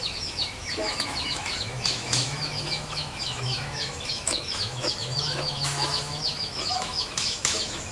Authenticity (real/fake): fake